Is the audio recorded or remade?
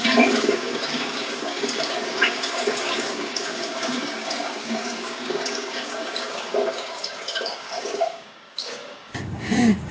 remade